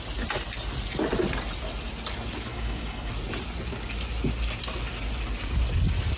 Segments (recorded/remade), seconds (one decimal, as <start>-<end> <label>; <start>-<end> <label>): 0.0-2.5 recorded; 2.5-3.1 remade; 3.1-6.2 recorded